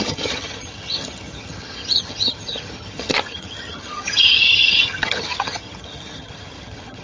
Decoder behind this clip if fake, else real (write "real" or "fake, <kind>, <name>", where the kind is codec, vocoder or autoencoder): fake, vocoder, HiFi-GAN